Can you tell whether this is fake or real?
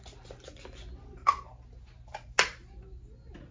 real